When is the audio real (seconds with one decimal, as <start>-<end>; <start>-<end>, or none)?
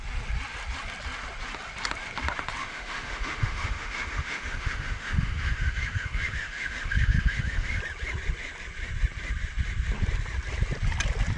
0.0-2.6; 7.8-11.4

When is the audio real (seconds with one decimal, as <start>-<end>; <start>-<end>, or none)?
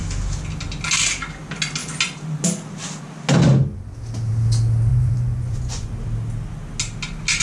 0.0-4.9; 5.9-7.4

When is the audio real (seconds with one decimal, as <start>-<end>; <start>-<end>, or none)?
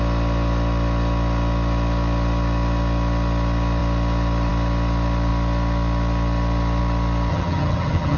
0.0-7.3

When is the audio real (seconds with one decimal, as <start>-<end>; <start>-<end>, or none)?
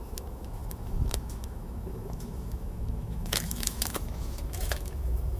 none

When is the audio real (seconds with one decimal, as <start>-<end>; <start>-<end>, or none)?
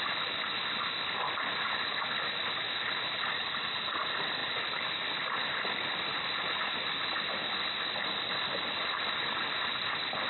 0.0-10.3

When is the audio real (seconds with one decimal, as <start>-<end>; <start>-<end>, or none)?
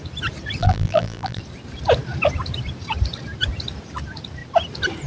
0.0-0.6; 1.4-5.1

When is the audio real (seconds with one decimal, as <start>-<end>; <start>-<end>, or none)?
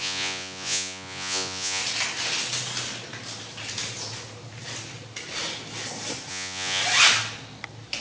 1.8-6.3; 6.8-8.0